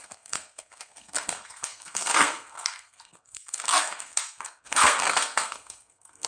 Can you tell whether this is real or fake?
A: fake